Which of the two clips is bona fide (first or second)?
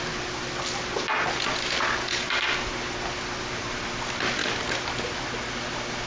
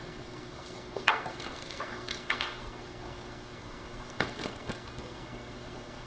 first